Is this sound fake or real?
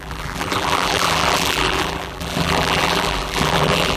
fake